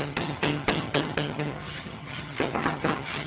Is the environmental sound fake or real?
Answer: fake